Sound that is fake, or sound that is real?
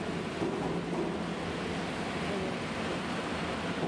real